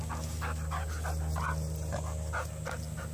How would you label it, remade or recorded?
recorded